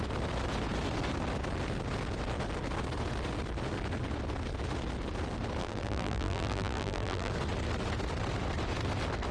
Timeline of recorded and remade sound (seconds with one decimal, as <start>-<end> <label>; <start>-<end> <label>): 0.0-5.6 recorded; 5.6-7.3 remade; 7.3-9.3 recorded